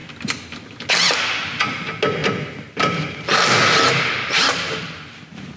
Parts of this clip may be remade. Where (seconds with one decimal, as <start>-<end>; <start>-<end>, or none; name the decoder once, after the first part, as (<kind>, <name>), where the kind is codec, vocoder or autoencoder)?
2.2-5.6 (vocoder, BigVGAN v2)